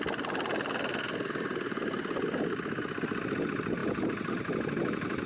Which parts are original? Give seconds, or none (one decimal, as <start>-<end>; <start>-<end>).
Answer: 0.0-5.3